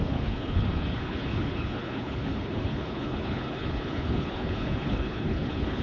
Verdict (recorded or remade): remade